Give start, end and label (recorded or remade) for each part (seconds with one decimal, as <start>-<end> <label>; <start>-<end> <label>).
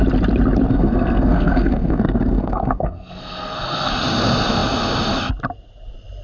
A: 0.0-0.7 recorded; 0.7-3.9 remade; 3.9-6.2 recorded